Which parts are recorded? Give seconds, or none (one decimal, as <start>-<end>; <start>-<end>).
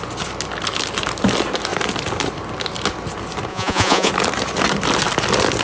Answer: 0.0-3.5; 4.1-5.6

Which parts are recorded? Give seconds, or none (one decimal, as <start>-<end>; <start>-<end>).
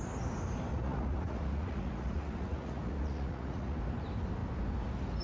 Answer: 0.0-0.7; 3.8-5.2